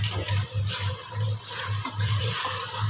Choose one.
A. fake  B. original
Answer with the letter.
A